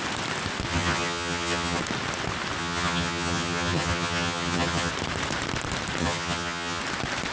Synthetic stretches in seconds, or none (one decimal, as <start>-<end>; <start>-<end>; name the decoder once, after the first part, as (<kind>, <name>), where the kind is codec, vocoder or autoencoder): 0.7-1.8 (vocoder, HiFi-GAN); 2.6-4.9; 6.0-6.8